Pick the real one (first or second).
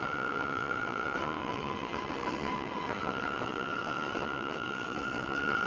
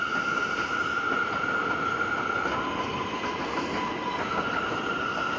second